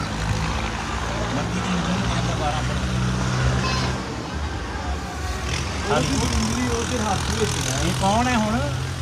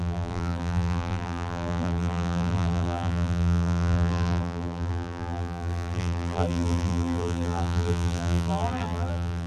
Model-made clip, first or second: second